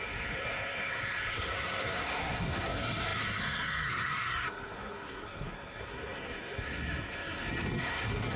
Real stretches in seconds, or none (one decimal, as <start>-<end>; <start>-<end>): none